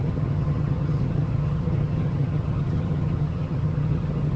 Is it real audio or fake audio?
fake